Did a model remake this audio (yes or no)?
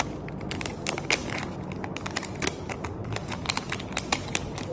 no